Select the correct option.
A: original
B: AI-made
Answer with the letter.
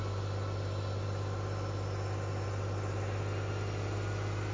A